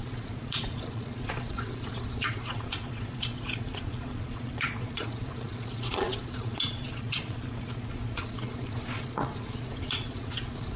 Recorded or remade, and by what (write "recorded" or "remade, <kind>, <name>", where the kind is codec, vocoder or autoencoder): remade, vocoder, Vocos